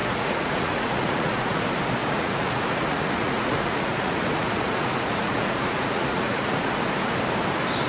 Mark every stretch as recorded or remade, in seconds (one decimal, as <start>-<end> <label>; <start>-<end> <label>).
0.0-1.6 remade; 1.6-2.0 recorded; 2.0-6.7 remade; 6.7-7.9 recorded